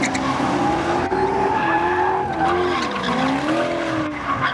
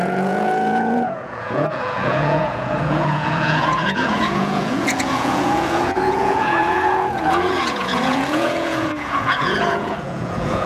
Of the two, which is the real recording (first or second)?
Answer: first